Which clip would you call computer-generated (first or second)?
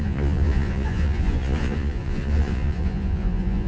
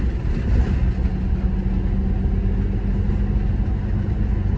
first